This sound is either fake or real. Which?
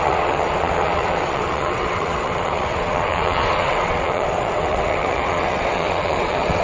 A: fake